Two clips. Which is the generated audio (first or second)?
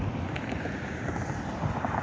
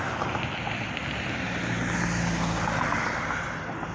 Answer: first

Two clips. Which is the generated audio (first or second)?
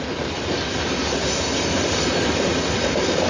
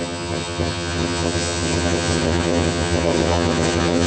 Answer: second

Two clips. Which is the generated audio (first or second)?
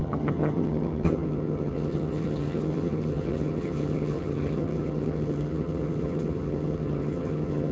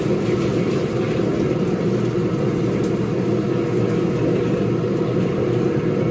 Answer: first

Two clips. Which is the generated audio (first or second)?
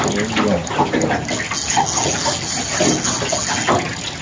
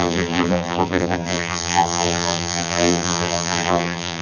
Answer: second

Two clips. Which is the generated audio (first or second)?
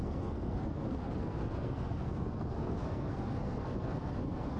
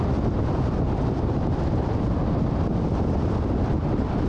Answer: first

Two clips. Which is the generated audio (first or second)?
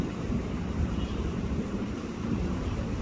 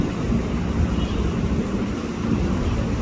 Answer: first